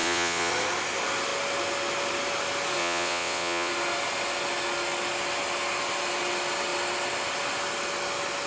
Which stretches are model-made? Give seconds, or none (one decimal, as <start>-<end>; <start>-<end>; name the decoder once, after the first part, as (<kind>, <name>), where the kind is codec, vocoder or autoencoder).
0.0-0.5 (vocoder, WaveNeXt); 2.8-3.7